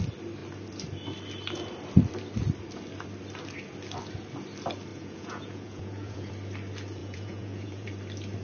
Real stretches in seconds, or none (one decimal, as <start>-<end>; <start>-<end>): 0.0-4.9; 6.3-7.0; 7.9-8.4